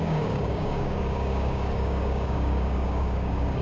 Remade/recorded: remade